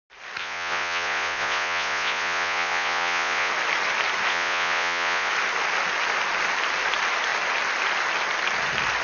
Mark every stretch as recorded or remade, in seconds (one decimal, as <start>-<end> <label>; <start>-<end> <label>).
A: 0.0-0.4 recorded; 0.4-3.5 remade; 3.5-4.3 recorded; 4.3-5.3 remade; 5.3-9.0 recorded